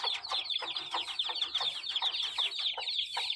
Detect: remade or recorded recorded